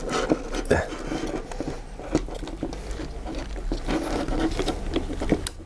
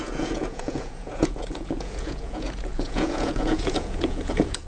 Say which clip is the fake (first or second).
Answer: second